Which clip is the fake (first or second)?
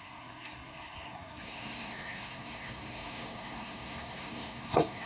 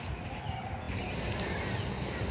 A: first